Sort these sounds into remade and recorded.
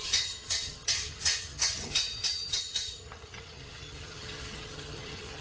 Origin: remade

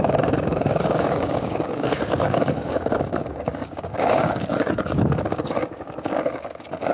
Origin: remade